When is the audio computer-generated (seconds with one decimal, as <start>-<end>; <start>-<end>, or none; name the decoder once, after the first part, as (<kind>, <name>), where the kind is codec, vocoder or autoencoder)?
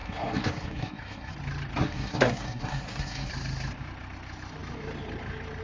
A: 0.0-1.3 (codec, SNAC); 1.8-3.3